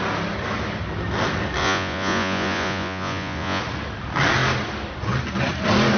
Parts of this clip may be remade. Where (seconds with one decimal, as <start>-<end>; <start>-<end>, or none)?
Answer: 1.6-3.6